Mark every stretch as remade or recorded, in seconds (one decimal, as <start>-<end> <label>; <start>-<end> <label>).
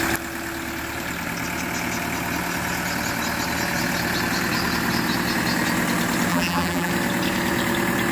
0.0-6.3 recorded; 6.3-6.9 remade; 6.9-8.1 recorded